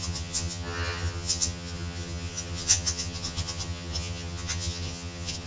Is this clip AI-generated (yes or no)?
yes